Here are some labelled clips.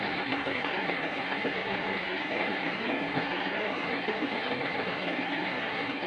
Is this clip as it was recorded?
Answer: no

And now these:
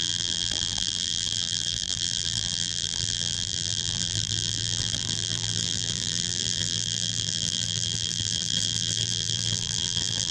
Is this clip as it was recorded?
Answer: no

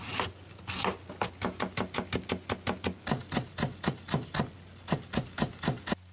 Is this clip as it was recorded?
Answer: yes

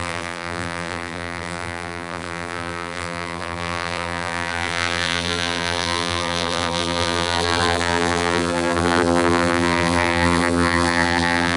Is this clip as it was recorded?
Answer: no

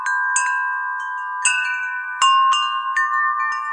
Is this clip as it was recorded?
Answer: yes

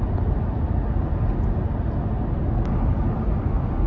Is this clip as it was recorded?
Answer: yes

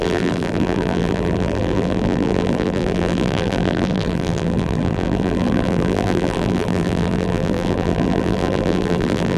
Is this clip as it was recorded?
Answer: no